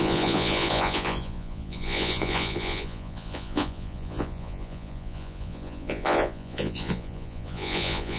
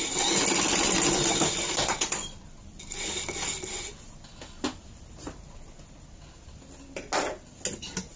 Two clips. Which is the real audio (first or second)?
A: second